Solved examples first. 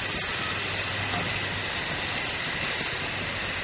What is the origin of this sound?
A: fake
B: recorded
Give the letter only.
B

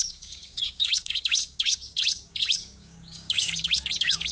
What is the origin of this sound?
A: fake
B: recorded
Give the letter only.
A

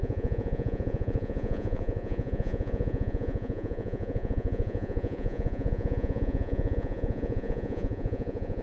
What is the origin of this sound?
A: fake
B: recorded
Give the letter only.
A